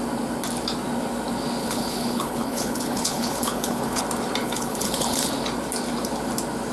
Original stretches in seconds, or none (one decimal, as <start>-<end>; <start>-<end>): 0.0-1.6; 4.0-4.4; 5.3-6.7